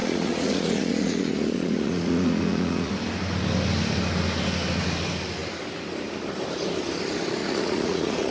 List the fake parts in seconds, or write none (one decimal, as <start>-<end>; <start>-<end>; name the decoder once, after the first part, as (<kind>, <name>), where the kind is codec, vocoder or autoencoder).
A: 0.0-2.9 (vocoder, Vocos); 7.4-8.3